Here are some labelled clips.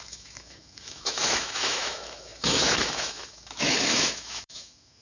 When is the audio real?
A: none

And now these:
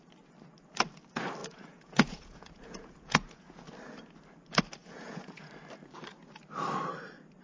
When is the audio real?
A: 0.0-1.4; 3.6-4.8; 5.5-7.4

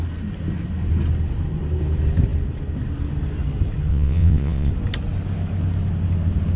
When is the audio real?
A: 0.0-3.9; 4.7-6.6

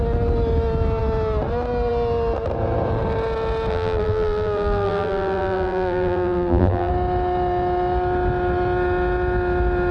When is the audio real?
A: 0.0-3.7; 6.9-9.9

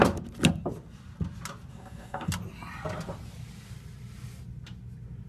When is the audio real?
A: 0.0-1.7; 2.3-5.3